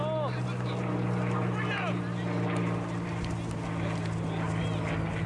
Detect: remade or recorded recorded